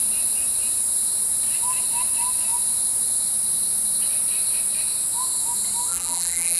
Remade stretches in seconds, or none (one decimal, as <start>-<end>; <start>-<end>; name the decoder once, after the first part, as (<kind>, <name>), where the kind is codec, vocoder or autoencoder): 5.9-6.6 (vocoder, BigVGAN v2)